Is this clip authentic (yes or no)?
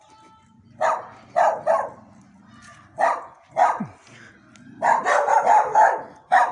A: yes